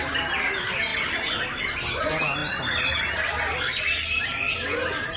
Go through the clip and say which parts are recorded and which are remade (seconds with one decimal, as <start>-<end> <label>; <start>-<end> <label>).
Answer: 0.0-5.2 recorded

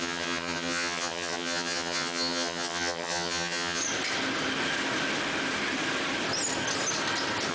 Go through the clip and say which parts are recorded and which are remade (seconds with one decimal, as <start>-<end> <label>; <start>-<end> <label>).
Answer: 0.0-3.8 remade; 3.8-7.5 recorded

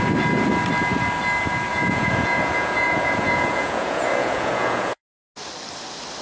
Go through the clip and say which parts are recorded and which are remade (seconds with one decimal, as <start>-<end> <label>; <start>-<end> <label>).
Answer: 0.0-1.7 recorded; 1.7-5.0 remade; 5.0-6.2 recorded

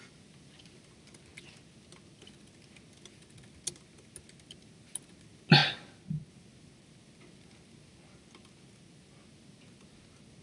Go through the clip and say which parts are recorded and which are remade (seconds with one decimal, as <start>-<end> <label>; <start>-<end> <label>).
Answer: 0.0-10.4 recorded

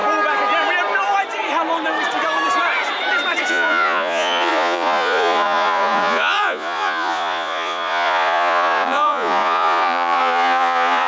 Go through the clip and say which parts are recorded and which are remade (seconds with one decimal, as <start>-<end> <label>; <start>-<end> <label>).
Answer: 0.0-3.5 recorded; 3.5-11.1 remade